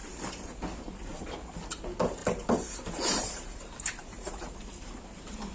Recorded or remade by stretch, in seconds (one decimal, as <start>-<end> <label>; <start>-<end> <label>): 0.0-2.2 recorded; 2.2-5.5 remade